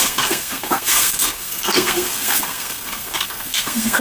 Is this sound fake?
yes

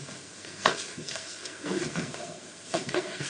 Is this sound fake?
yes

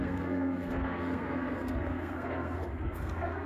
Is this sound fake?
yes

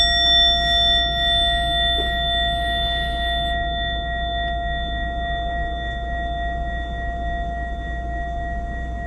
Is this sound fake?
no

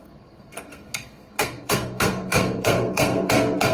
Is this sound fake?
yes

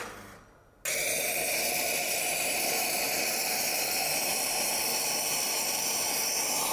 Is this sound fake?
no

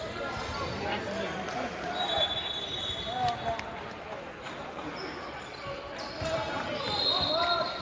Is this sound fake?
no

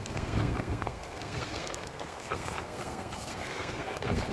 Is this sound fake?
yes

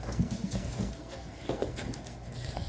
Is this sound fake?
yes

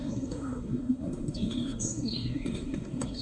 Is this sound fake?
yes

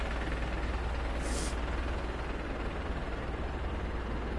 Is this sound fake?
no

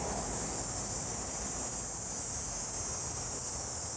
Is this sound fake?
no